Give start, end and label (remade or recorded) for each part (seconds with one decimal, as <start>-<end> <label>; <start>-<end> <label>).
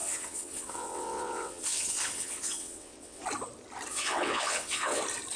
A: 0.0-3.2 remade; 3.2-3.9 recorded; 3.9-5.0 remade; 5.0-5.4 recorded